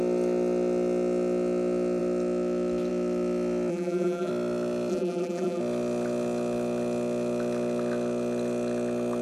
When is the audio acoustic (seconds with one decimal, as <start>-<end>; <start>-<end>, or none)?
0.0-3.7; 4.3-4.9; 5.6-9.2